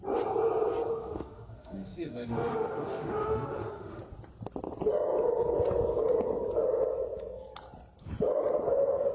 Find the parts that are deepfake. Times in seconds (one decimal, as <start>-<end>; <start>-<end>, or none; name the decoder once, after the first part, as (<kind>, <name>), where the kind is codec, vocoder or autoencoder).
0.9-4.0 (autoencoder, DAC-VAE)